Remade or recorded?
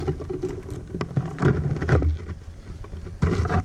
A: recorded